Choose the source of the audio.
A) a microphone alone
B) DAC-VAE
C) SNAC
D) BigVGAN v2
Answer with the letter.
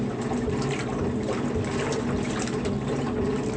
A